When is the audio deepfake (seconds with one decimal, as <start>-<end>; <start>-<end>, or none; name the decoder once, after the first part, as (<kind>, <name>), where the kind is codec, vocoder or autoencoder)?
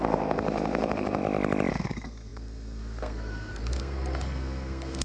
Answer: 0.0-1.2 (codec, SNAC); 1.7-5.0